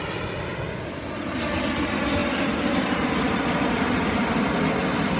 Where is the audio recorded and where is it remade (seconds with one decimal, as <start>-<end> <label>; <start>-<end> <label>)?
0.0-2.2 recorded; 2.2-4.2 remade; 4.2-5.2 recorded